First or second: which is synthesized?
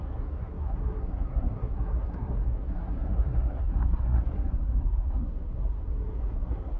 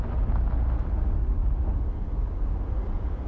first